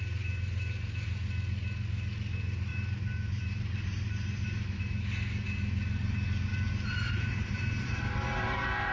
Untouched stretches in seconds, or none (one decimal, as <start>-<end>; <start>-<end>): 0.0-2.7; 4.8-6.5